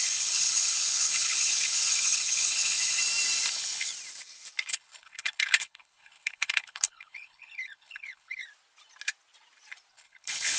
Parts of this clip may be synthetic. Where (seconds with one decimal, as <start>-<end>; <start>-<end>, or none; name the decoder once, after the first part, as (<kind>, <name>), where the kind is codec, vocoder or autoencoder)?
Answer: 0.0-3.0 (codec, HILCodec); 3.5-3.9; 4.7-8.4; 9.9-10.6